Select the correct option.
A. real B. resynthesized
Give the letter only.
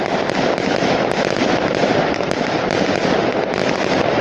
A